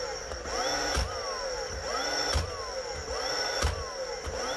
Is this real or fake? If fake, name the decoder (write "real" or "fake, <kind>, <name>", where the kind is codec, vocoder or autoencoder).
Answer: real